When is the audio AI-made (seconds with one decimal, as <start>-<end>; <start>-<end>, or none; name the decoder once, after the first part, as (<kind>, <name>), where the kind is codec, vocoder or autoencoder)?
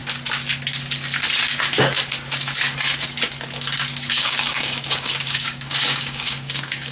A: 4.1-6.9 (codec, DAC)